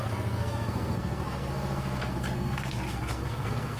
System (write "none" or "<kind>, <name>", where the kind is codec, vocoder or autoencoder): codec, SNAC